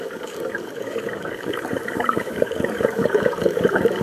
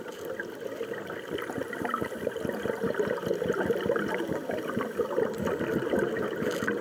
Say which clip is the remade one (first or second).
first